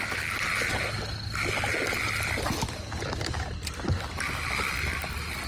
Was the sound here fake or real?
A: real